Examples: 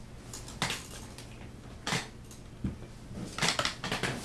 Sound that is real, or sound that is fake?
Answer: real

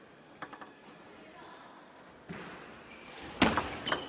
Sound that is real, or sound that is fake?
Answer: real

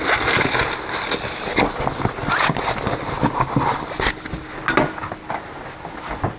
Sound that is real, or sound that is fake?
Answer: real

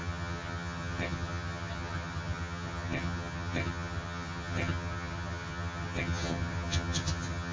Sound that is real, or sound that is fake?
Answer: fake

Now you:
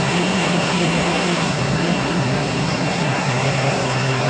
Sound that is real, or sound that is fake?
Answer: fake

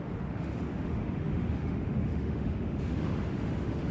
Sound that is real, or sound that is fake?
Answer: fake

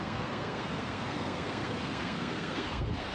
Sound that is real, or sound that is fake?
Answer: fake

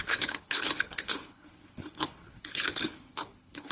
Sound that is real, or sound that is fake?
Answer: fake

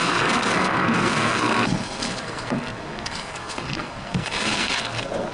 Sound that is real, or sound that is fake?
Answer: fake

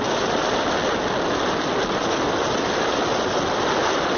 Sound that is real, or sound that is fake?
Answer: real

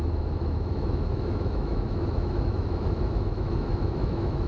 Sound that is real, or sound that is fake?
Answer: fake